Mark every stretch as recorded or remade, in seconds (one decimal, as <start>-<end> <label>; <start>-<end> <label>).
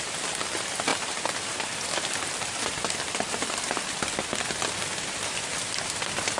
0.0-0.9 recorded; 0.9-4.0 remade; 4.0-6.4 recorded